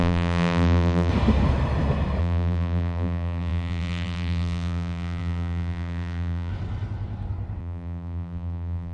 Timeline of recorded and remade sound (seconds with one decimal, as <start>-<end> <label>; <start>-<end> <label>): 0.0-1.1 remade; 1.1-2.2 recorded; 2.2-6.5 remade; 6.5-7.6 recorded; 7.6-8.9 remade